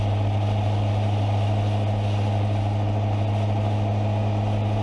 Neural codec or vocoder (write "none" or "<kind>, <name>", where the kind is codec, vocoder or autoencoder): none